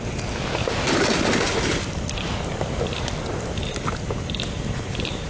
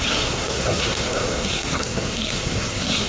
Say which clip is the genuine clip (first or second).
first